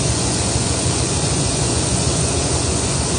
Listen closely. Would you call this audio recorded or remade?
remade